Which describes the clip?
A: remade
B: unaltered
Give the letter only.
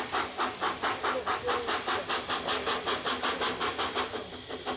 B